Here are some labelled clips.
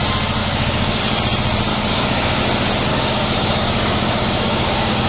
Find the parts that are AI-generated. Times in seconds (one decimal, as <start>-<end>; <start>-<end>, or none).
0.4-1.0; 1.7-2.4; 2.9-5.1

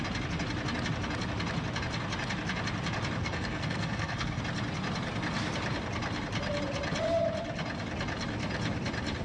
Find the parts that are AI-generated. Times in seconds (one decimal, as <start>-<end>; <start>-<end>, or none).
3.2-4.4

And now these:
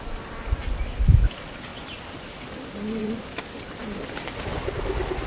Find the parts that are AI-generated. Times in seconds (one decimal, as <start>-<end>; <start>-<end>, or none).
none

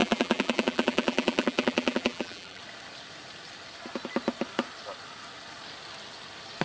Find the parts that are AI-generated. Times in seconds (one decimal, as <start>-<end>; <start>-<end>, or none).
0.0-2.6

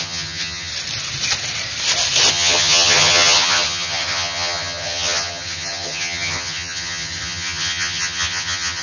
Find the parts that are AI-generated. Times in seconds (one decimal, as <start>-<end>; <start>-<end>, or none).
0.0-0.7; 2.3-8.8